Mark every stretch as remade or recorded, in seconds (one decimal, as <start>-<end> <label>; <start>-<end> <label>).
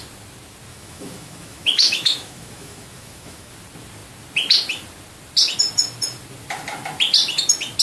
0.0-0.7 recorded; 0.7-3.5 remade; 3.5-7.8 recorded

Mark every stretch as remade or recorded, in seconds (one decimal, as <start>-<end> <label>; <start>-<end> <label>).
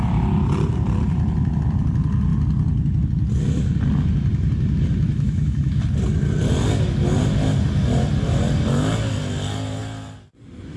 0.0-5.1 recorded; 5.1-5.8 remade; 5.8-10.8 recorded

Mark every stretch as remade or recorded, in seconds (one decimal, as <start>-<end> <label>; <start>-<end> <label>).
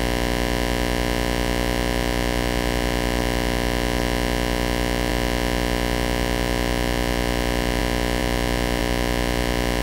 0.0-9.8 recorded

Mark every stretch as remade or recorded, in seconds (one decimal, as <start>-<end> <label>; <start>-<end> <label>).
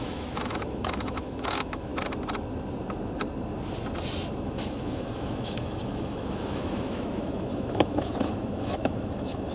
0.0-1.9 remade; 1.9-4.3 recorded; 4.3-9.5 remade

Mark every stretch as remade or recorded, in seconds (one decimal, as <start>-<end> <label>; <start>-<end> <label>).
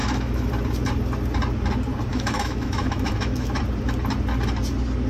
0.0-0.5 remade; 0.5-2.1 recorded; 2.1-3.6 remade; 3.6-5.1 recorded